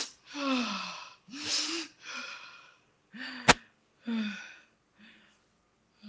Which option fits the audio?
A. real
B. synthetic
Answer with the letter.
A